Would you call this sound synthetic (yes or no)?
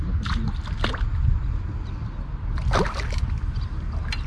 no